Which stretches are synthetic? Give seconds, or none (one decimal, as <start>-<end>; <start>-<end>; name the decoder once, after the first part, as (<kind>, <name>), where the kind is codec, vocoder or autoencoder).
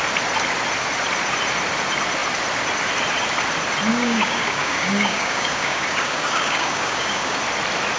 3.9-7.4 (codec, DAC)